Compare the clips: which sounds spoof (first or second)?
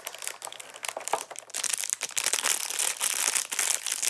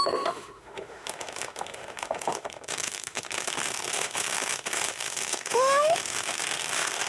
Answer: second